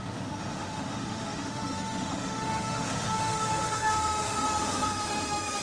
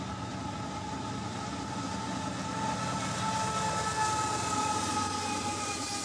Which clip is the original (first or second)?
second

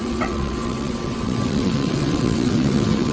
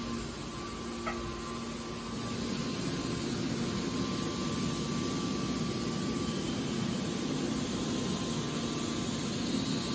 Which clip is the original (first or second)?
second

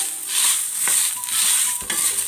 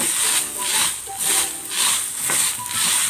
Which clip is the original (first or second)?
second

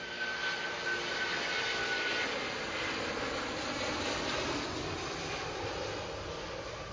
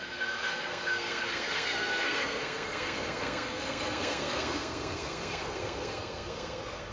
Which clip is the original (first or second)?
first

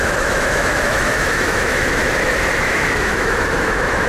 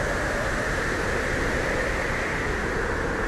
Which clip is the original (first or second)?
second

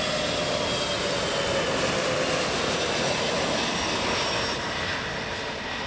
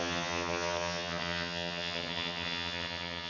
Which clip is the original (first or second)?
first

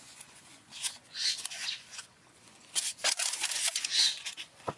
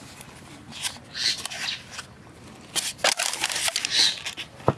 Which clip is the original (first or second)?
second